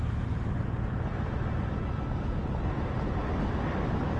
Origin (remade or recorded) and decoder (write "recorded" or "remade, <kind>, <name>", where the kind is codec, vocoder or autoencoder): recorded